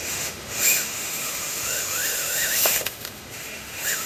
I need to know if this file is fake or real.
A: fake